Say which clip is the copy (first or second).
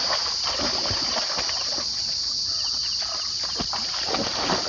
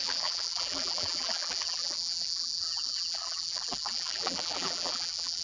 second